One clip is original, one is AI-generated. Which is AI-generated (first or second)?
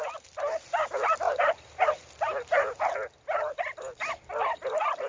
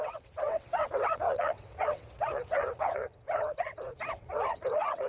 second